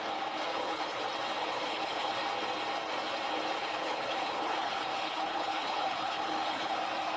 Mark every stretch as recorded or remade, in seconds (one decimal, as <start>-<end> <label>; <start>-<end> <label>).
0.0-0.5 recorded; 0.5-1.0 remade; 1.0-1.5 recorded; 1.5-2.1 remade; 2.1-3.6 recorded; 3.6-6.8 remade; 6.8-7.2 recorded